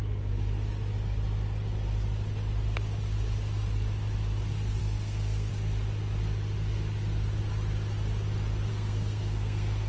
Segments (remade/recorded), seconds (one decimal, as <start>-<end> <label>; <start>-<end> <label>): 0.0-4.8 recorded; 4.8-5.5 remade; 5.5-8.7 recorded; 8.7-9.9 remade